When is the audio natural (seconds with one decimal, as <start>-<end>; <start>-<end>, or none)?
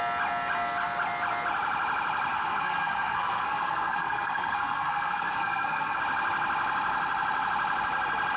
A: 0.0-2.3; 6.0-8.4